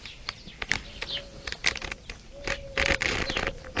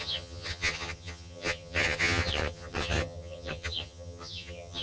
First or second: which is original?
first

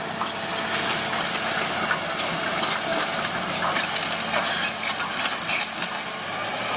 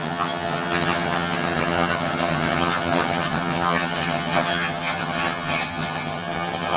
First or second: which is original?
first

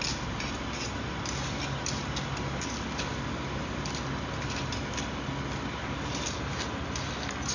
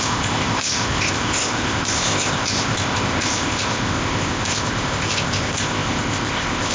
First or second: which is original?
first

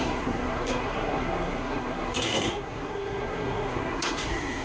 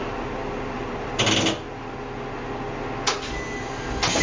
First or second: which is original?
second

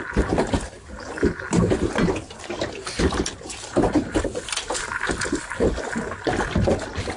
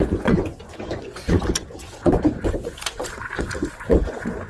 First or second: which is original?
first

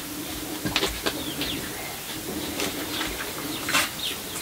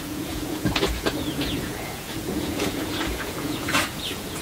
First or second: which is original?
first